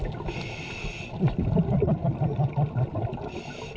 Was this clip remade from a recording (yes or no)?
no